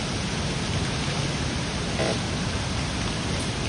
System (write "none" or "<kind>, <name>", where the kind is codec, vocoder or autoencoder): none